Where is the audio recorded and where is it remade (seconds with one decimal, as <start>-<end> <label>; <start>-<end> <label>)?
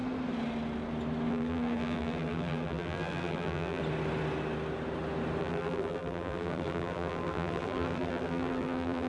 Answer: 0.0-1.3 recorded; 1.3-3.8 remade; 3.8-5.4 recorded; 5.4-9.1 remade